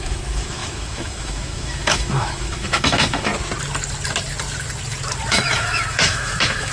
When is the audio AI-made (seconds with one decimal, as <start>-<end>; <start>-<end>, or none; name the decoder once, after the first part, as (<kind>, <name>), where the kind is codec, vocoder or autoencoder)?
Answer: 0.0-3.3 (autoencoder, DAC-VAE); 5.3-6.7